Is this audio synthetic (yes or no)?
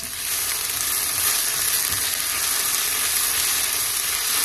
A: no